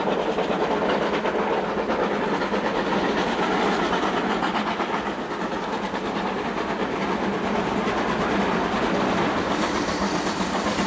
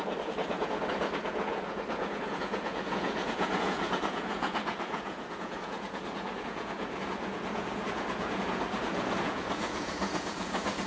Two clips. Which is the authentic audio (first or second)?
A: first